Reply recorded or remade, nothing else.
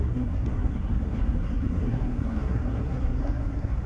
remade